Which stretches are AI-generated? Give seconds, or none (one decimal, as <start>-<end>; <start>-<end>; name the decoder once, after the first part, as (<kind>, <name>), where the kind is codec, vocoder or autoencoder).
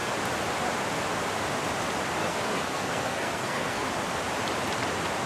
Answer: 2.2-3.9 (codec, SNAC)